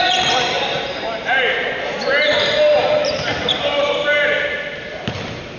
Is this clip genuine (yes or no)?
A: no